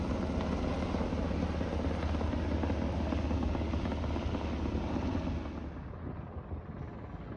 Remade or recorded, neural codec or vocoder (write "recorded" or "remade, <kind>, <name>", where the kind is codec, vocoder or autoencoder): recorded